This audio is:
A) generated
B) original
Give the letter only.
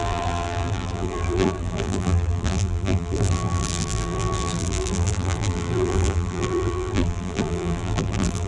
A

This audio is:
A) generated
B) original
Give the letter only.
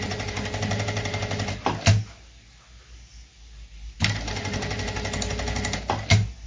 B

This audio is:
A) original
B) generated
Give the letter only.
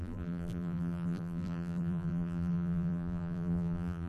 B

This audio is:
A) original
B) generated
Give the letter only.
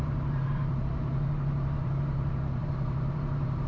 B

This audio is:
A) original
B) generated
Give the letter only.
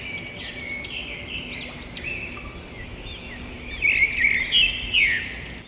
A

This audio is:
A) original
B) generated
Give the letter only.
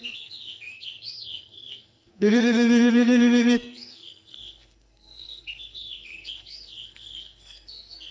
B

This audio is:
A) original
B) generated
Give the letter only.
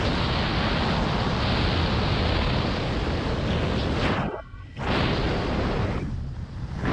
A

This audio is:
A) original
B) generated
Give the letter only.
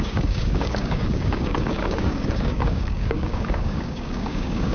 B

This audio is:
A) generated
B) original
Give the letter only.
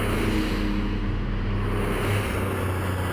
B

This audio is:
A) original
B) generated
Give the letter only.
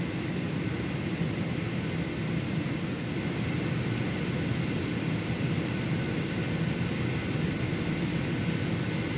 A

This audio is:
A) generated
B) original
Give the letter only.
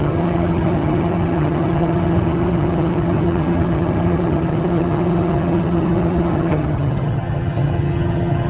A